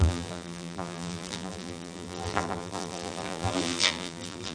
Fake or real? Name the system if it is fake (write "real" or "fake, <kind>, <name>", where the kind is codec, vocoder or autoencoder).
fake, vocoder, BigVGAN v2